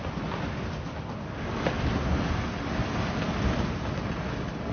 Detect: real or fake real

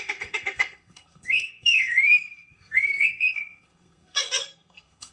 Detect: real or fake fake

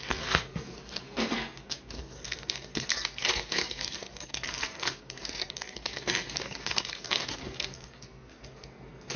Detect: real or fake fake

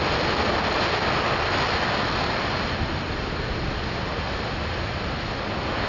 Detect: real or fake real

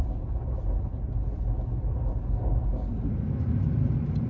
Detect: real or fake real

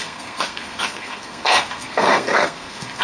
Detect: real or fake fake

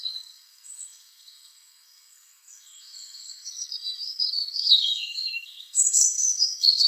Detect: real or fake fake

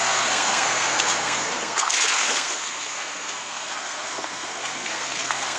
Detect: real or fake fake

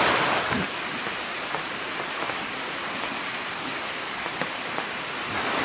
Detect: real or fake real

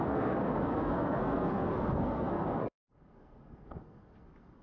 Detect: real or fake fake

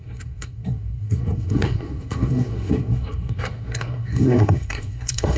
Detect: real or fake fake